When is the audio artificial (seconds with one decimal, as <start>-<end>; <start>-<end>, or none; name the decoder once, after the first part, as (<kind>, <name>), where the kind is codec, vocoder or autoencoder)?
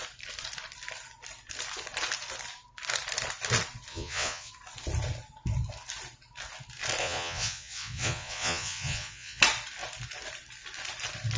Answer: 3.9-4.5 (vocoder, Vocos); 7.0-9.4